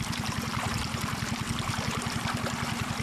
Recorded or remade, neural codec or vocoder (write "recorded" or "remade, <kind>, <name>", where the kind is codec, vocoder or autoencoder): recorded